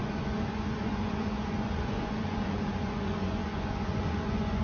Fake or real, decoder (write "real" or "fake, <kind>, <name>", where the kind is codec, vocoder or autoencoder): fake, vocoder, Vocos